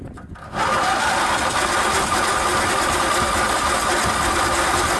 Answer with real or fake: real